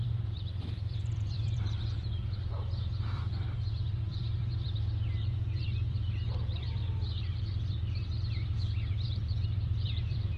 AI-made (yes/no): yes